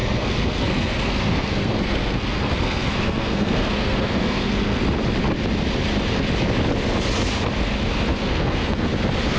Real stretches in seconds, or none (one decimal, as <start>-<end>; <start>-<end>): 4.8-8.1; 8.9-9.4

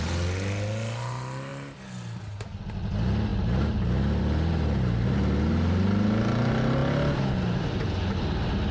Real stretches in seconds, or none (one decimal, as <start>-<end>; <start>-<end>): 0.0-8.7

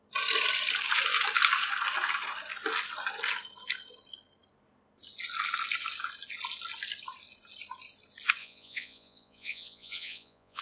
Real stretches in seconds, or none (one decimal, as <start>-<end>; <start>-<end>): 0.0-8.4